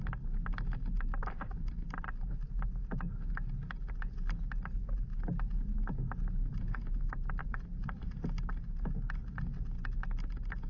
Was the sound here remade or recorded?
recorded